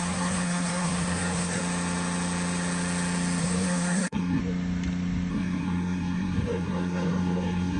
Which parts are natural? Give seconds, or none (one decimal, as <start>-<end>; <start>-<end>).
1.6-3.4; 4.4-5.3

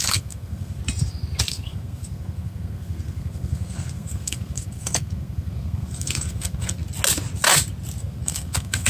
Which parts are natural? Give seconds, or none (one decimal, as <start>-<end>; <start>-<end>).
0.8-1.5; 6.8-8.0

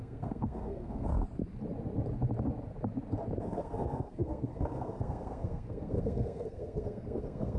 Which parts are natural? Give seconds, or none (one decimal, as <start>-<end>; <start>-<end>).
1.2-3.4

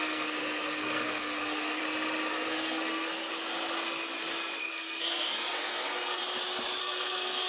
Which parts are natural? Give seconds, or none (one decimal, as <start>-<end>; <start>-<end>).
1.8-2.3; 3.3-4.6; 6.2-6.8

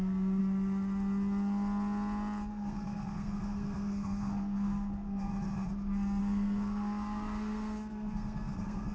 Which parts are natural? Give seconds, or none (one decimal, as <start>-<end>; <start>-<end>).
0.4-2.5; 5.3-6.2

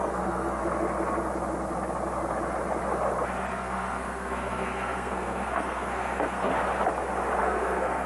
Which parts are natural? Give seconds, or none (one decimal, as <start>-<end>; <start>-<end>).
0.6-3.5; 6.5-7.4

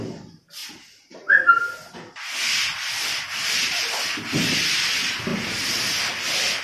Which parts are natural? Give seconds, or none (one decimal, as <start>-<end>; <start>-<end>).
0.0-6.6

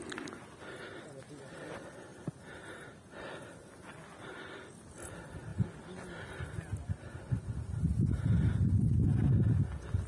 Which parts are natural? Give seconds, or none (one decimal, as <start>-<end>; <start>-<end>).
0.0-10.1